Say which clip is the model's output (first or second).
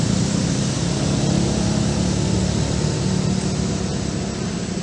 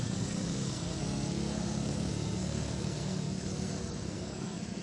second